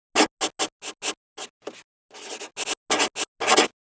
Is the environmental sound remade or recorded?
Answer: recorded